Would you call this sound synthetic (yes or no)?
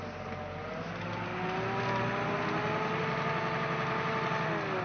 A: no